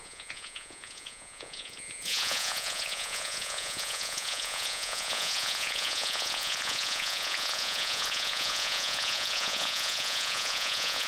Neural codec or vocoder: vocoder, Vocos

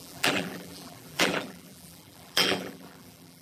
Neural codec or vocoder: vocoder, BigVGAN v2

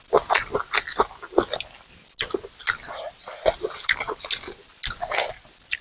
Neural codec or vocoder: none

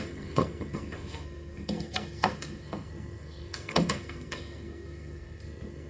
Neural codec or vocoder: codec, SNAC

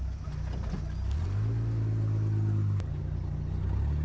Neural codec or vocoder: none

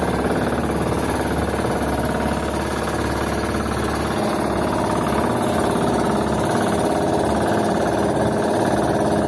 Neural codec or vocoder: none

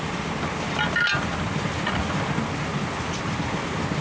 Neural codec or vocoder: none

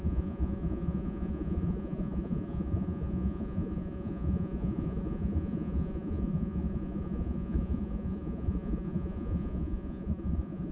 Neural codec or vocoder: vocoder, Vocos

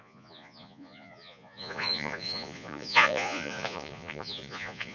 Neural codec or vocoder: vocoder, Vocos